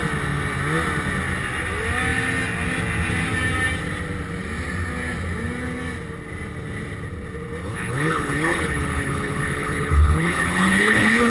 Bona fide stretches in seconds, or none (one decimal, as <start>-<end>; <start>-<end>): 0.0-7.6